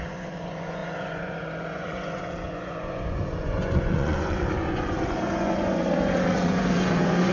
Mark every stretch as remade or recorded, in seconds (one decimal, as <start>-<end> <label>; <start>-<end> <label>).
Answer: 0.0-7.3 remade